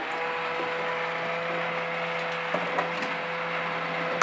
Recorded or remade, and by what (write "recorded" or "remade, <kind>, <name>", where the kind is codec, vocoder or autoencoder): recorded